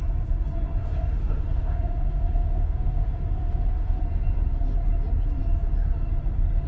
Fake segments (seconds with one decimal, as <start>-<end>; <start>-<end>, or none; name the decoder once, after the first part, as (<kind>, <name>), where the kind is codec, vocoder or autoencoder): 0.8-4.0 (autoencoder, DAC-VAE)